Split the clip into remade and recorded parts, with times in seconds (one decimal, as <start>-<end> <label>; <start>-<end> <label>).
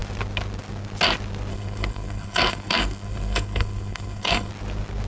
0.0-1.5 recorded; 1.5-4.5 remade; 4.5-5.1 recorded